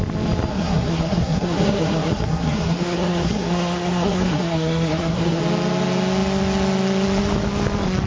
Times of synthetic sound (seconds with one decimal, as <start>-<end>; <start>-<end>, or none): 0.5-5.4